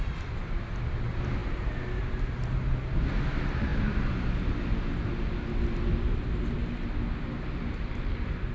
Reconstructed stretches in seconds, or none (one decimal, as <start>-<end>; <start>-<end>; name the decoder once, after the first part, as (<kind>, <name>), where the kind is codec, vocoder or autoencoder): none